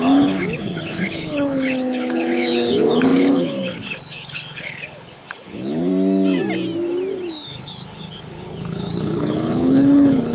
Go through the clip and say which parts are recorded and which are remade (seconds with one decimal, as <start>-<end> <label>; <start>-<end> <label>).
0.0-5.9 remade; 5.9-7.3 recorded; 7.3-10.3 remade